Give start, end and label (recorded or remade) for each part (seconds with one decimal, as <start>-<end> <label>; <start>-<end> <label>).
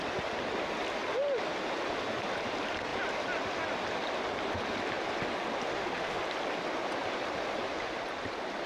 0.0-5.7 recorded; 5.7-6.2 remade; 6.2-8.7 recorded